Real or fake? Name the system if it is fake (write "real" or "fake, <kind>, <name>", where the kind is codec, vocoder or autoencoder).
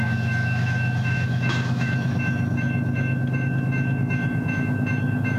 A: fake, autoencoder, DAC-VAE